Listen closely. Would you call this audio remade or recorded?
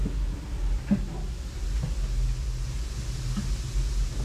recorded